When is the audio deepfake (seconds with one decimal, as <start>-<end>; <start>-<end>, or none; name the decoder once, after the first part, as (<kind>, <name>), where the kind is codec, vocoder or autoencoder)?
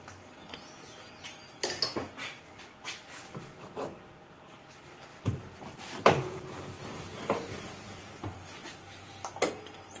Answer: 5.1-6.4 (vocoder, BigVGAN v2)